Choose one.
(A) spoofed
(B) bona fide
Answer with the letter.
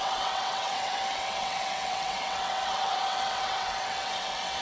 A